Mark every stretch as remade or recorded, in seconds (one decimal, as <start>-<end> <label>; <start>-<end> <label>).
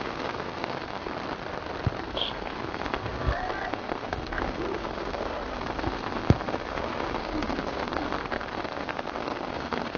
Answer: 0.0-1.1 remade; 1.1-2.0 recorded; 2.0-10.0 remade